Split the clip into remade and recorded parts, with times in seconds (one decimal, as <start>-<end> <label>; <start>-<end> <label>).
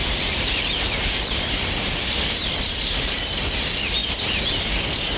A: 0.0-3.1 remade; 3.1-5.2 recorded